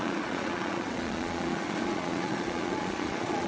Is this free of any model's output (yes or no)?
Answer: no